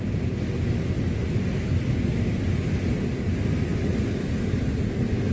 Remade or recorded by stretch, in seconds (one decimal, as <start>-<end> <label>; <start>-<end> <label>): 0.0-5.3 recorded